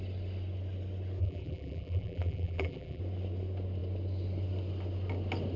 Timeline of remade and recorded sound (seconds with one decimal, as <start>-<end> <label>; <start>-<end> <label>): 0.0-1.2 recorded; 1.2-3.0 remade; 3.0-5.6 recorded